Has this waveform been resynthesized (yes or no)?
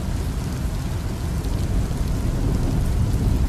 no